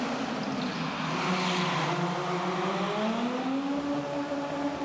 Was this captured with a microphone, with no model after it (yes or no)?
yes